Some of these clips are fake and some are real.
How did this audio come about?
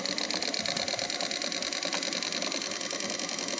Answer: real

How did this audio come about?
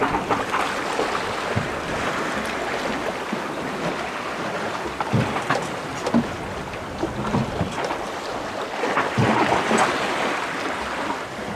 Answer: real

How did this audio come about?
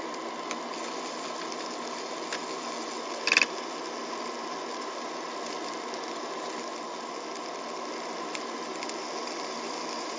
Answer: real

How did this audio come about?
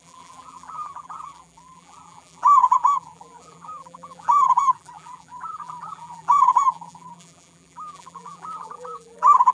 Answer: fake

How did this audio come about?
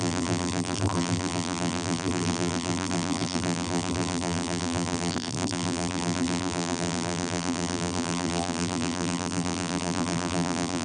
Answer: fake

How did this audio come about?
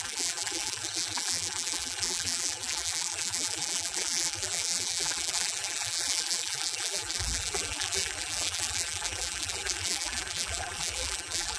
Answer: fake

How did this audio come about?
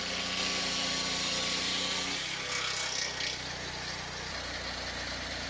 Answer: real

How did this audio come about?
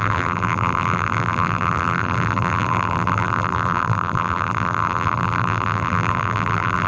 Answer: fake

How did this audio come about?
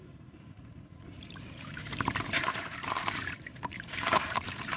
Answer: fake